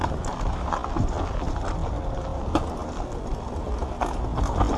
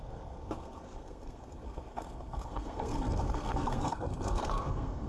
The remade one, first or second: second